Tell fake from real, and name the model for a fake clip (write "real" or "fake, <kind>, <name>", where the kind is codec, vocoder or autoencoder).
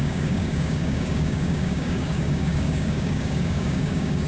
fake, codec, DAC